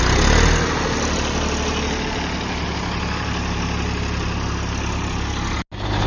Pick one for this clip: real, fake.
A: real